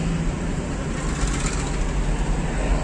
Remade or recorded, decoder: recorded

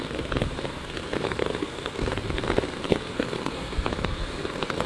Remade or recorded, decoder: remade, codec, SNAC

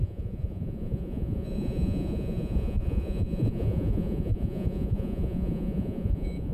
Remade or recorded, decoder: remade, vocoder, Vocos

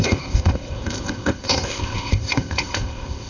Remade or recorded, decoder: remade, codec, ZipCodec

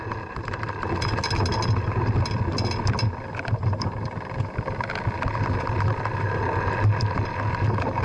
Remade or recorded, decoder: recorded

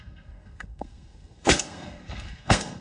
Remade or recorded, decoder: remade, codec, SNAC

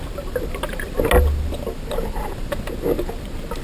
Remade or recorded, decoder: recorded